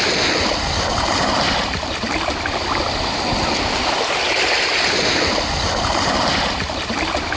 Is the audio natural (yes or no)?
yes